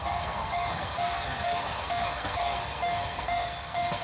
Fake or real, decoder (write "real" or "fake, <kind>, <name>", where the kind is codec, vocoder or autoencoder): fake, codec, SNAC